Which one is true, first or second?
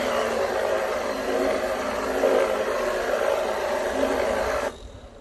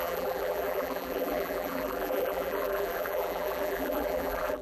first